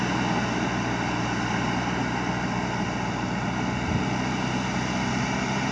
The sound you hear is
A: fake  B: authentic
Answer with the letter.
B